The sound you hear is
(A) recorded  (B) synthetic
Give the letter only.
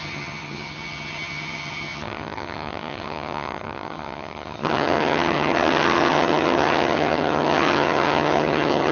B